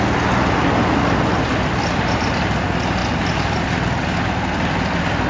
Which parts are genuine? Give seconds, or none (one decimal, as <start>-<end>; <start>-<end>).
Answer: 0.0-5.3